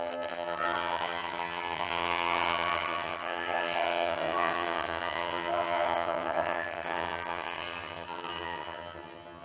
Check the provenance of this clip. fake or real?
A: fake